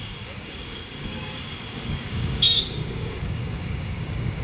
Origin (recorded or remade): remade